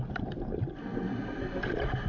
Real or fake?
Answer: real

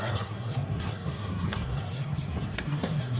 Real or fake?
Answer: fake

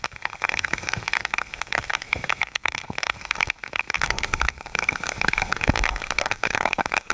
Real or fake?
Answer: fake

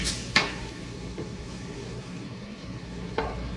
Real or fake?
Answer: fake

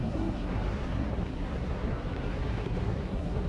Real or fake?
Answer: fake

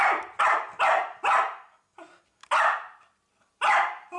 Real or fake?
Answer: real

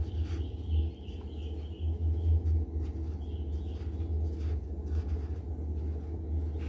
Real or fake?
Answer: real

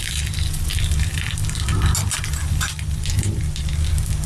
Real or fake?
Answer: real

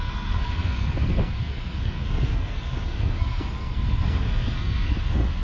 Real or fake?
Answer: fake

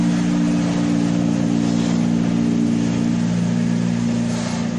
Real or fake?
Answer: real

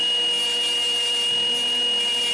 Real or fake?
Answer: real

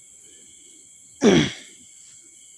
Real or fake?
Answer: real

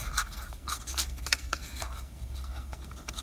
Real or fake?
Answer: fake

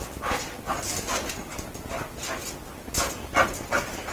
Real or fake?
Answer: real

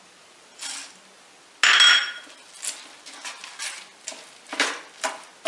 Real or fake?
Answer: real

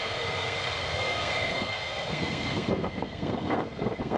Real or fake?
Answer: fake